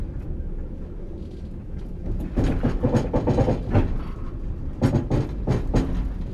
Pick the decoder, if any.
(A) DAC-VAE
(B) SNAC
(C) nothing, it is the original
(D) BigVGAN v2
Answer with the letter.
C